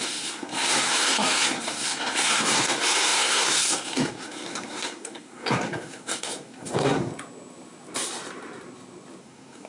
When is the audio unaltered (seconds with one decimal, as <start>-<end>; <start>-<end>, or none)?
7.1-9.2